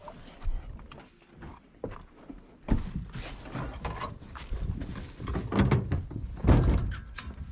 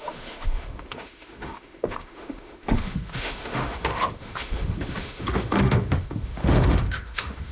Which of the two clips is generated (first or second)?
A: second